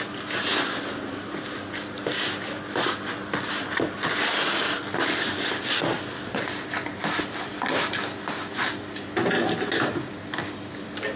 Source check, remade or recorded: recorded